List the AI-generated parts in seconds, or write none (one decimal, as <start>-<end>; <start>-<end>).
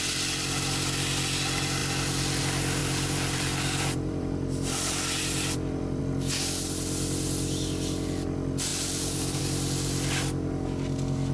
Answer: 2.8-6.0